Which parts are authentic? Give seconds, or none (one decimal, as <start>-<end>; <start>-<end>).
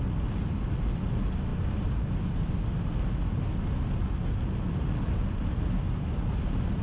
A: 0.0-1.5; 2.5-6.8